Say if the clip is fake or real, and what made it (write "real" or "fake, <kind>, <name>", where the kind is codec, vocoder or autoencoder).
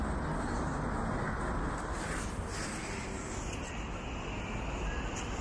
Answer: real